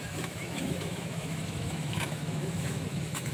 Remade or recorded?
remade